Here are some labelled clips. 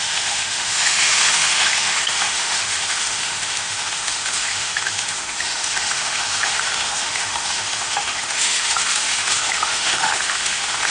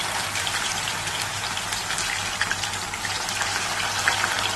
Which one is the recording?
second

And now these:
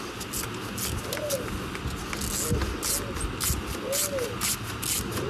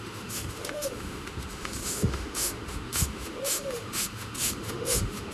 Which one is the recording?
first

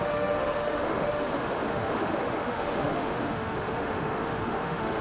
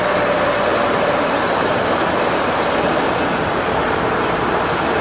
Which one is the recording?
second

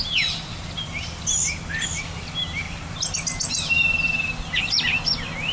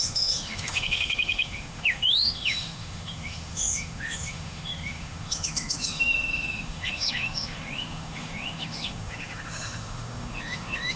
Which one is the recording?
first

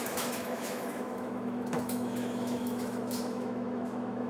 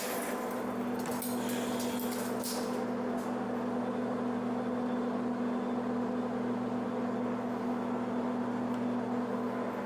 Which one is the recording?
second